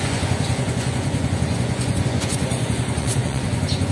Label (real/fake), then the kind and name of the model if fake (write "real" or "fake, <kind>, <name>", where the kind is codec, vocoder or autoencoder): fake, vocoder, Vocos